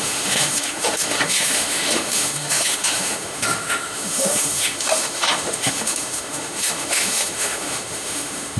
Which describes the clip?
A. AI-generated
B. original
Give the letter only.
A